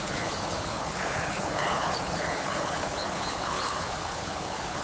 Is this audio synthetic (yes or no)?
yes